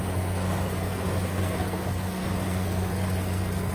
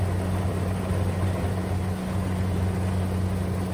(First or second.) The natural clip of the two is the second